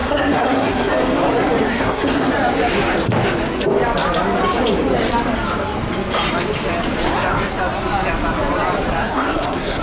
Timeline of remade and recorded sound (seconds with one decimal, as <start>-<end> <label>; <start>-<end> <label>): 0.0-0.9 remade; 0.9-1.7 recorded; 1.7-2.3 remade; 2.3-9.0 recorded; 9.0-9.8 remade